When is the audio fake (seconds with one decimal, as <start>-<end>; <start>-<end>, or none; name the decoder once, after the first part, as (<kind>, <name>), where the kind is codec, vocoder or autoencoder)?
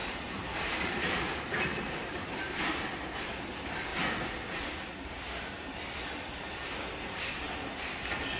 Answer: 0.0-1.4 (vocoder, BigVGAN v2); 2.0-3.5